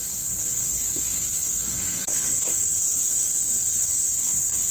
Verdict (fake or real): fake